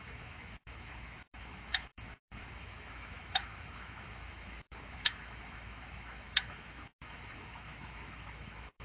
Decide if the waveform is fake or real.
fake